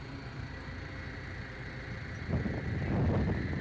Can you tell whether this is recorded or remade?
recorded